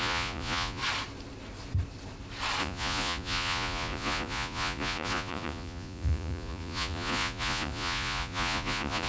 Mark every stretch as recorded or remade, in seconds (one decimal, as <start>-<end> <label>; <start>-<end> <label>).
0.0-0.8 remade; 0.8-2.6 recorded; 2.6-9.1 remade

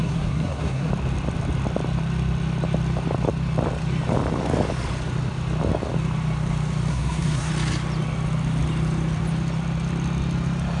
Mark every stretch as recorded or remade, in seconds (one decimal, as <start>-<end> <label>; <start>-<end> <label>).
0.0-0.9 remade; 0.9-6.9 recorded; 6.9-7.5 remade; 7.5-10.8 recorded

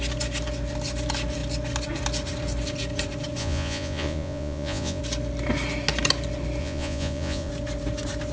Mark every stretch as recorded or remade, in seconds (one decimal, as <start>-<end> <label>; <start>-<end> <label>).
0.0-3.4 recorded; 3.4-5.0 remade; 5.0-6.6 recorded; 6.6-7.5 remade; 7.5-8.3 recorded